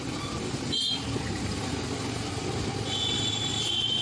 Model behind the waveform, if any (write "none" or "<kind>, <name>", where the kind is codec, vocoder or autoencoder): none